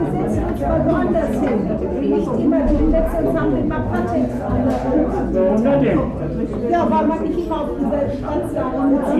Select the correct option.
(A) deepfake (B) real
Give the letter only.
B